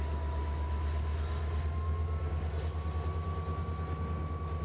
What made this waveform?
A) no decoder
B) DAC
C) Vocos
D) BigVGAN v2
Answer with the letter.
A